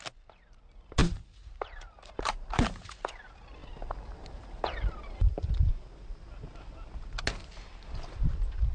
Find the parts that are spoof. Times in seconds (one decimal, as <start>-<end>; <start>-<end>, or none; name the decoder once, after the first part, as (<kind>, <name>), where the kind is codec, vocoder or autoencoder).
1.0-3.0 (vocoder, BigVGAN v2); 3.6-5.7